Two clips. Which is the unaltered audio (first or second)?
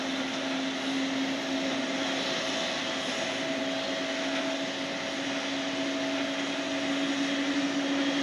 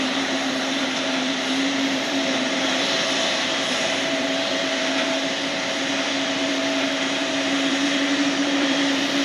first